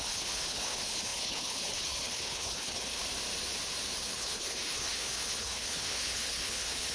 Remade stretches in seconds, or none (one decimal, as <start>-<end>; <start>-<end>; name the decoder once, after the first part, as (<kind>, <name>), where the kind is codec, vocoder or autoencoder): 0.0-3.0 (codec, HILCodec); 4.0-6.9